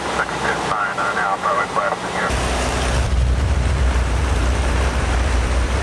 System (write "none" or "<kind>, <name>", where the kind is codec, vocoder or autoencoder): vocoder, BigVGAN v2